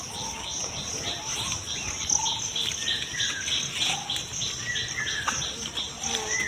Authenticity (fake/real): real